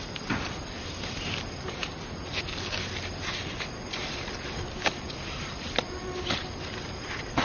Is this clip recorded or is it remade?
recorded